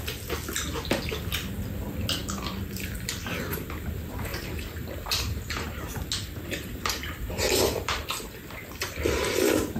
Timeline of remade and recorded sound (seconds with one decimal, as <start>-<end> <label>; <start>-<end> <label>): 0.0-4.3 recorded; 4.3-5.8 remade; 5.8-6.7 recorded; 6.7-8.0 remade; 8.0-9.8 recorded